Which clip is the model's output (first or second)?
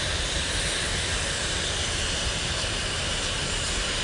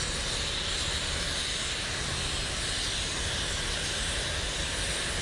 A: first